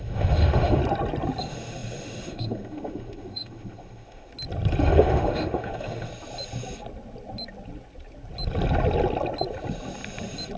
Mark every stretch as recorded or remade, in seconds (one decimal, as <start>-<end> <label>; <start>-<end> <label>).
0.0-0.8 remade; 0.8-1.4 recorded; 1.4-4.3 remade; 4.3-4.8 recorded; 4.8-6.1 remade; 6.1-10.6 recorded